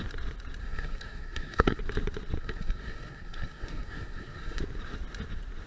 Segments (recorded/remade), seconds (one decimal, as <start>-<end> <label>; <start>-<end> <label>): 0.0-0.6 recorded; 0.6-1.8 remade; 1.8-2.4 recorded; 2.4-4.6 remade; 4.6-5.7 recorded